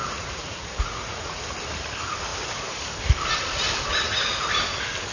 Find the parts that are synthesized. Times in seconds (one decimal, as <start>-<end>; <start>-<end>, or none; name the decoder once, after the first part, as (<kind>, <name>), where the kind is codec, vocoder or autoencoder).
0.0-1.4 (vocoder, Vocos)

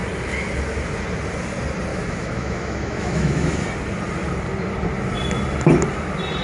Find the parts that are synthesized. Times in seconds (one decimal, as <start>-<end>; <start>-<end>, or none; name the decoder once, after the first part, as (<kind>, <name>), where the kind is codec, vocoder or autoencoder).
1.9-3.6 (autoencoder, DAC-VAE)